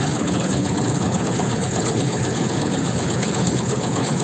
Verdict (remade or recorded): remade